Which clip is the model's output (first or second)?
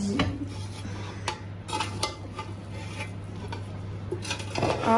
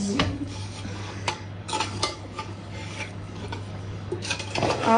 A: second